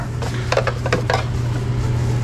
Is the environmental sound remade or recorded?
recorded